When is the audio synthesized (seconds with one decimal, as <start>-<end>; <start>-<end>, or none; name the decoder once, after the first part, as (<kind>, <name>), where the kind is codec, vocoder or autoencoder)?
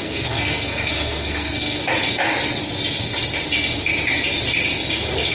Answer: 0.0-1.8 (codec, SNAC)